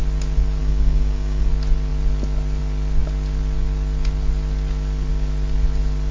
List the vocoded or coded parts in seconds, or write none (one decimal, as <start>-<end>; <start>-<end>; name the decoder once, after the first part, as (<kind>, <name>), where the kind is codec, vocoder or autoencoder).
0.6-1.5 (codec, DAC)